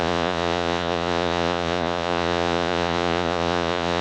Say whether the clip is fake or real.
fake